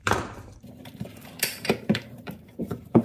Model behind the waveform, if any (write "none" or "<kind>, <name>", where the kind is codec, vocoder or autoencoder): vocoder, BigVGAN v2